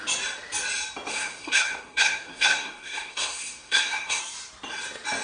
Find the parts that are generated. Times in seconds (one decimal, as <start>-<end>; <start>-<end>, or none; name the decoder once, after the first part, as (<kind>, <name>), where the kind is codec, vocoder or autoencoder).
1.1-4.2 (codec, SNAC)